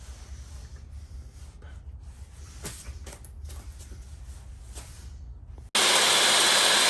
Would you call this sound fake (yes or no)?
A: no